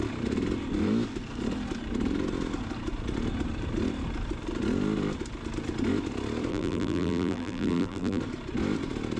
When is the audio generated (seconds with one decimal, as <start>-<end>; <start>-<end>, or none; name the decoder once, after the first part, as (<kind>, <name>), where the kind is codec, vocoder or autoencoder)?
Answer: 6.5-8.2 (vocoder, BigVGAN v2)